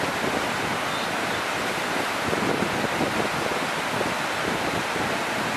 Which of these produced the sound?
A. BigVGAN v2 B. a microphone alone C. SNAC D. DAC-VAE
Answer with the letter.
B